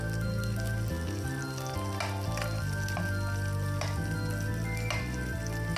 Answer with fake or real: real